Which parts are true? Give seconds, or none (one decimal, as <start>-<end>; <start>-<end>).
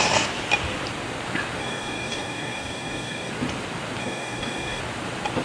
0.0-1.6; 3.3-4.0; 4.8-5.4